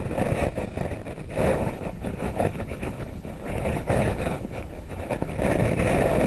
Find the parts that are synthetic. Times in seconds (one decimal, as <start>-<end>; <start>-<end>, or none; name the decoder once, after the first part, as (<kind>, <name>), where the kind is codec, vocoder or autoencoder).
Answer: 1.5-5.3 (codec, HILCodec)